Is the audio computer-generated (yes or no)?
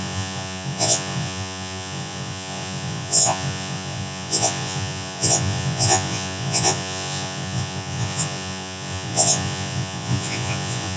yes